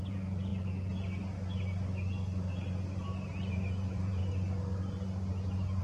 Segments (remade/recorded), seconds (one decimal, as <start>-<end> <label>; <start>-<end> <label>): 0.0-0.5 remade; 0.5-3.5 recorded; 3.5-4.2 remade; 4.2-5.8 recorded